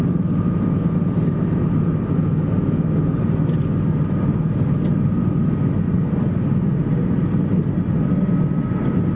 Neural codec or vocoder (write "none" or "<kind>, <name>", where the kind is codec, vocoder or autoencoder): none